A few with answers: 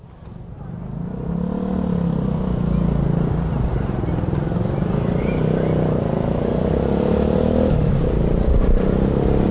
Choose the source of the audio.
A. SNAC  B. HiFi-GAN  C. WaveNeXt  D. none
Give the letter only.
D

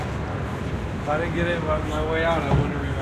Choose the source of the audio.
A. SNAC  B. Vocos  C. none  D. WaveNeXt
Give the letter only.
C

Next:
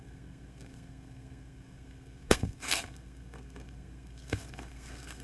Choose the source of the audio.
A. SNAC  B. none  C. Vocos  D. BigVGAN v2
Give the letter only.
A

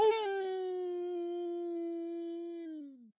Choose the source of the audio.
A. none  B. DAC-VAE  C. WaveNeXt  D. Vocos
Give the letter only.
A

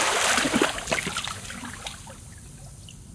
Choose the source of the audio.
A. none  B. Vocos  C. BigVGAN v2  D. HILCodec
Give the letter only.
A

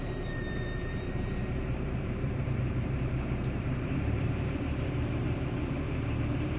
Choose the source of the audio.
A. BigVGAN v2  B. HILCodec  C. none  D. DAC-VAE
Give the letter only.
A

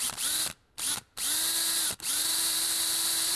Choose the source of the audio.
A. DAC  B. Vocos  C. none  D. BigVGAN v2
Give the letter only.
D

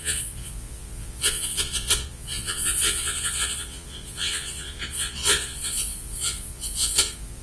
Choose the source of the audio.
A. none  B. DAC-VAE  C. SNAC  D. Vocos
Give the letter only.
D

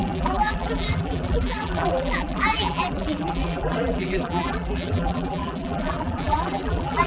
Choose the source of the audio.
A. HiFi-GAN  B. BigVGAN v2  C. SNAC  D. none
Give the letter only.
B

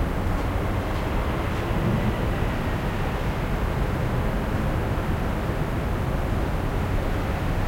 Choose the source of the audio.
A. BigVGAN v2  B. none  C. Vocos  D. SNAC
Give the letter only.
B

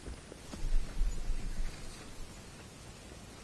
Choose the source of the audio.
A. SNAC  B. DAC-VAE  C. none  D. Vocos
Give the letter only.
C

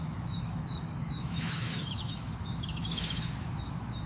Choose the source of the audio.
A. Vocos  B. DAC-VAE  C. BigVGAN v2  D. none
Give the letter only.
B